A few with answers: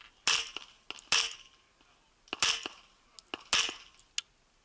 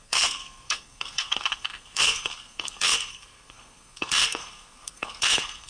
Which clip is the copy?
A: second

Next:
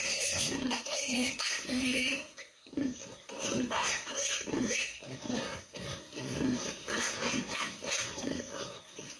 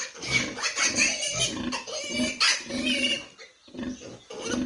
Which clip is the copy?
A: first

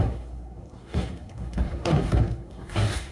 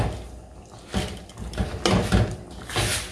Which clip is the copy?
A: first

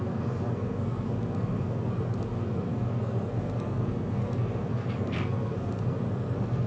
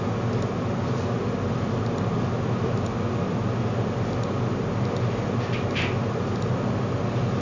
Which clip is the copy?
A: first